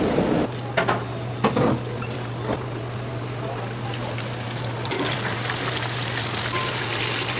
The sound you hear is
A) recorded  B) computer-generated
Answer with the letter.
A